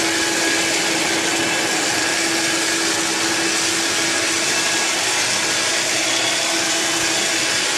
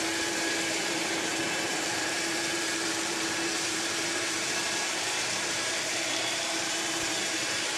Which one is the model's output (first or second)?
second